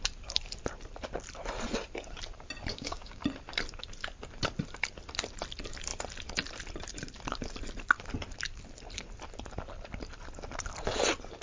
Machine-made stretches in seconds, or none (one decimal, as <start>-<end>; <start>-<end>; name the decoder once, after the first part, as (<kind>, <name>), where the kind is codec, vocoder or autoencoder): 2.7-3.2 (codec, DAC)